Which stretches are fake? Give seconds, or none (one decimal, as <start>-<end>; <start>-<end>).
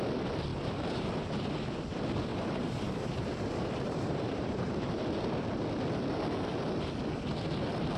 0.5-1.1; 2.3-5.1